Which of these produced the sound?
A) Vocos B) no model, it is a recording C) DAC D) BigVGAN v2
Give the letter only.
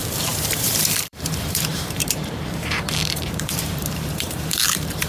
D